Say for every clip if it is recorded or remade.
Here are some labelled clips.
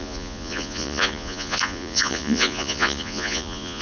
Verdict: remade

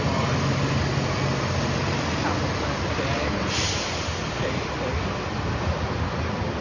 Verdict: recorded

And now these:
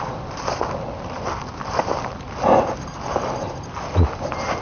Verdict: recorded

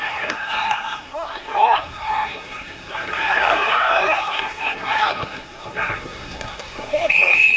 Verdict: remade